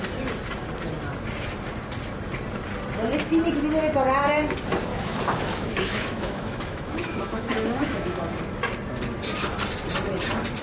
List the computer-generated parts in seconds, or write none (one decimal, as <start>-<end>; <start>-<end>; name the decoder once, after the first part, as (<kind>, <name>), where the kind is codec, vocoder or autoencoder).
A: 4.9-8.2 (autoencoder, DAC-VAE)